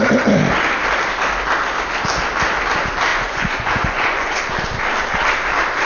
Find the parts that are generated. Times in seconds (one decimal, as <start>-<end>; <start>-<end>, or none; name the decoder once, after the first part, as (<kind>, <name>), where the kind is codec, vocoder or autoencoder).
3.1-4.4 (vocoder, Vocos)